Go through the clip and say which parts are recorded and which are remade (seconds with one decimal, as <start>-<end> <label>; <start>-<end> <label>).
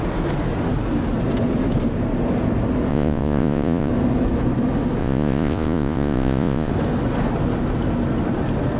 0.0-2.9 recorded; 2.9-3.9 remade; 3.9-5.0 recorded; 5.0-6.7 remade; 6.7-8.8 recorded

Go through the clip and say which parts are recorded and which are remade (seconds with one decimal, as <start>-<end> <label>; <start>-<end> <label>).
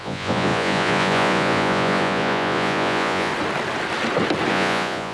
0.0-3.3 remade; 3.3-4.5 recorded; 4.5-5.1 remade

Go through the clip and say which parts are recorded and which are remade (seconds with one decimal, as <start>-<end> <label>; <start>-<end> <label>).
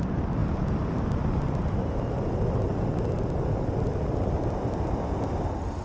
0.0-5.8 recorded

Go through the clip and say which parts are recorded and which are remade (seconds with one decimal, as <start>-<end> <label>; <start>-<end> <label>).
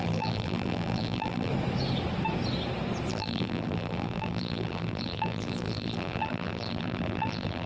0.0-1.5 remade; 1.5-3.1 recorded; 3.1-7.7 remade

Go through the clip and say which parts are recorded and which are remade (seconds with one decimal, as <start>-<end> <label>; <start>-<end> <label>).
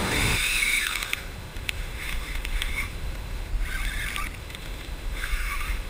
0.0-3.5 remade; 3.5-4.4 recorded; 4.4-5.9 remade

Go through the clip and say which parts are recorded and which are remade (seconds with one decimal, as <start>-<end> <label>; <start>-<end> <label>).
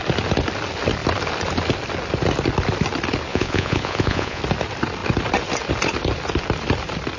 0.0-3.3 recorded; 3.3-4.4 remade; 4.4-7.2 recorded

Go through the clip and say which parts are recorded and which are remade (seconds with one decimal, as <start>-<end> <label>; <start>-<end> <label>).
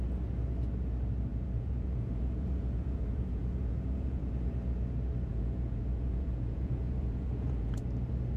0.0-1.3 recorded; 1.3-4.2 remade; 4.2-5.3 recorded; 5.3-7.8 remade; 7.8-8.4 recorded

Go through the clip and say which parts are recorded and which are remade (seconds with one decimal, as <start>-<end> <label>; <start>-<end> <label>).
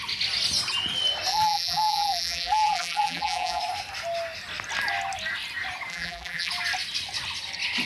0.0-1.3 recorded; 1.3-3.6 remade; 3.6-5.9 recorded; 5.9-6.5 remade; 6.5-7.9 recorded